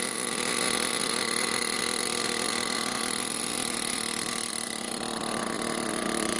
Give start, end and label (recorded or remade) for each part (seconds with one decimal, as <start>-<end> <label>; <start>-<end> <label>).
0.0-6.4 recorded